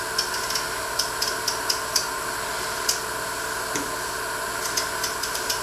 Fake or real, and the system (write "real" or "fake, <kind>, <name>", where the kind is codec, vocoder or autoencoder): real